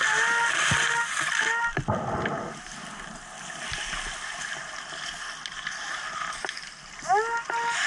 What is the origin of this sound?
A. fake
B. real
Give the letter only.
B